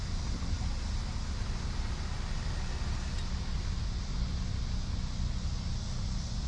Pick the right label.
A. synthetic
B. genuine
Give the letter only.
B